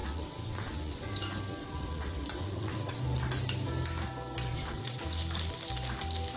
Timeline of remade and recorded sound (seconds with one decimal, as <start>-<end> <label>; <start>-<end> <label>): 0.0-1.1 remade; 1.1-1.6 recorded; 1.6-3.0 remade; 3.0-4.5 recorded; 4.5-5.2 remade; 5.2-6.4 recorded